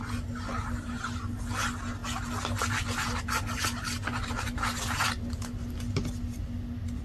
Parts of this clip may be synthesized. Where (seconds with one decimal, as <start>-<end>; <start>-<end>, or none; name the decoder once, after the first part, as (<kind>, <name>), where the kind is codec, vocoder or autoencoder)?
none

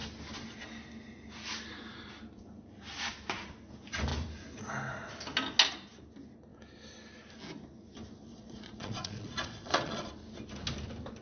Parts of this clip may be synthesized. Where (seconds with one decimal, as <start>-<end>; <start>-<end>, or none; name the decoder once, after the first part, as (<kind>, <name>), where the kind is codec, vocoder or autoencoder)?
8.3-10.1 (vocoder, Vocos)

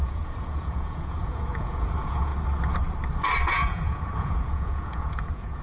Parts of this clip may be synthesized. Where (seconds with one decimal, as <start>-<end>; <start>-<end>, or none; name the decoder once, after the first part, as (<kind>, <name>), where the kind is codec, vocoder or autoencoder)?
0.0-2.3 (vocoder, Vocos); 3.5-5.6

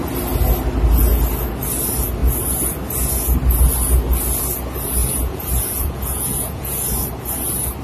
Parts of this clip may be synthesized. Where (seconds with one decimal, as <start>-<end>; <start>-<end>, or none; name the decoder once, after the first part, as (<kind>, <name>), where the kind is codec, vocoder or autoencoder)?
5.0-6.9 (vocoder, Vocos)

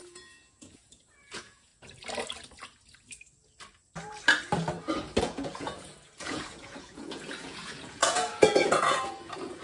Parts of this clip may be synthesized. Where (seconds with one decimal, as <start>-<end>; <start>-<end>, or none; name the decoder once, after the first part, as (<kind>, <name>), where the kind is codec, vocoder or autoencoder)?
0.0-1.7 (vocoder, Vocos); 5.2-9.6

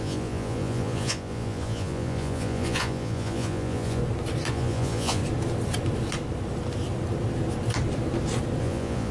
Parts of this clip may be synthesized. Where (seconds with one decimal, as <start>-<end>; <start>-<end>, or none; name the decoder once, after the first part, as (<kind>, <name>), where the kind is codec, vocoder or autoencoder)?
0.0-4.0 (vocoder, Vocos); 4.5-5.2; 8.6-9.1

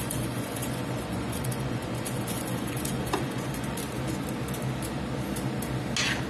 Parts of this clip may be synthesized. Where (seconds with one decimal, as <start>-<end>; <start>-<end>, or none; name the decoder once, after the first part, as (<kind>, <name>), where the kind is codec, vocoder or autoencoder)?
0.0-3.8 (vocoder, Vocos)

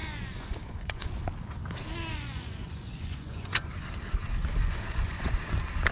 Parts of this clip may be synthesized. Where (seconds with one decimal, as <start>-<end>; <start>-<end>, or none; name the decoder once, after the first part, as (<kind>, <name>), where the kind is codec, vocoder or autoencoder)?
0.0-1.1 (vocoder, Vocos); 2.1-3.9; 4.6-5.3